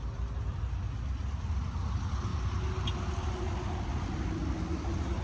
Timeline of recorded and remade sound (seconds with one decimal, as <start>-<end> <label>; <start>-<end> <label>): 0.0-5.2 recorded